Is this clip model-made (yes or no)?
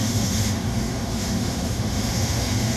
yes